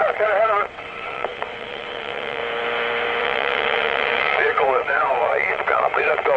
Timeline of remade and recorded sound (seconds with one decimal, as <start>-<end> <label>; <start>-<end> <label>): 0.0-2.4 remade; 2.4-3.2 recorded; 3.2-6.4 remade